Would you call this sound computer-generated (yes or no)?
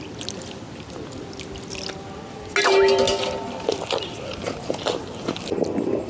no